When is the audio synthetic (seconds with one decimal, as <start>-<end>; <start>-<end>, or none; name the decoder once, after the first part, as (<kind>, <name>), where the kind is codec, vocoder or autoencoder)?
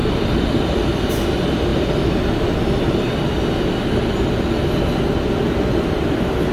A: 0.0-1.7 (vocoder, BigVGAN v2); 5.6-6.5